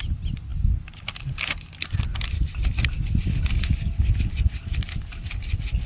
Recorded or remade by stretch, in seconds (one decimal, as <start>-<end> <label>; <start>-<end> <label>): 0.0-5.9 recorded